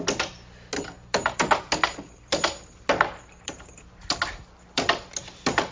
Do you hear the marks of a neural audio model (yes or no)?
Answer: no